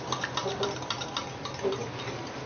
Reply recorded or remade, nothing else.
recorded